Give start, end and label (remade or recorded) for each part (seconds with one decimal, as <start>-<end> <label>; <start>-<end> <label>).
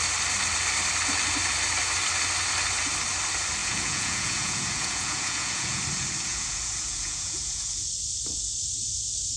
0.0-3.6 recorded; 3.6-5.8 remade; 5.8-6.3 recorded; 6.3-7.7 remade; 7.7-9.4 recorded